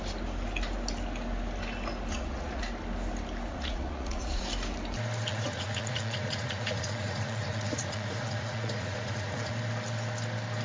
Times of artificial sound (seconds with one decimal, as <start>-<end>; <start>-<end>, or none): 2.1-2.6; 3.5-4.4; 5.3-9.5